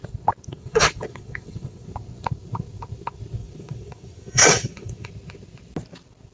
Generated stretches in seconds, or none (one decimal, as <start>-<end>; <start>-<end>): 0.5-1.9; 3.4-5.1